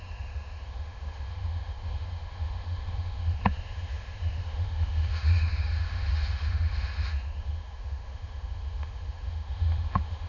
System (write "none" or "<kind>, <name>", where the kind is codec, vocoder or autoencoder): autoencoder, DAC-VAE